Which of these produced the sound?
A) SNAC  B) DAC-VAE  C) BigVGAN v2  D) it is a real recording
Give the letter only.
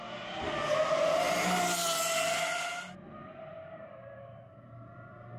D